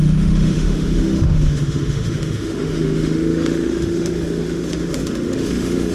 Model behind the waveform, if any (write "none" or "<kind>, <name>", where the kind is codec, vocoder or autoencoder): autoencoder, DAC-VAE